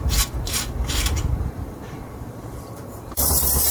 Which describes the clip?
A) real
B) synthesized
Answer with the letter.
B